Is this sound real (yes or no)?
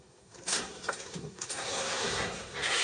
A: no